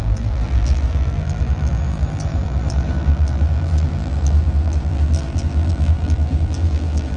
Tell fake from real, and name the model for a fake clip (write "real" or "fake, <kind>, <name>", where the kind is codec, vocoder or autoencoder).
fake, vocoder, BigVGAN v2